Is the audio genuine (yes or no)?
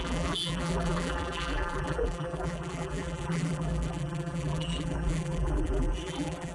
no